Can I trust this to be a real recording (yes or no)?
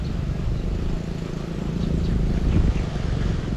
yes